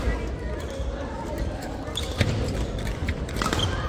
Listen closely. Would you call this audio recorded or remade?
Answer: recorded